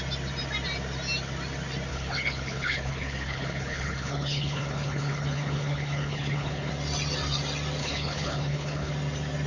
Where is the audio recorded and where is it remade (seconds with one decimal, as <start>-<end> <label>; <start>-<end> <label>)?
0.0-1.9 recorded; 1.9-6.7 remade; 6.7-7.8 recorded; 7.8-8.9 remade; 8.9-9.5 recorded